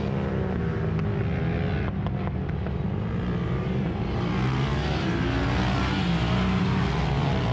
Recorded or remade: recorded